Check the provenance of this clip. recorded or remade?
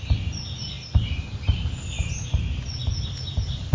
recorded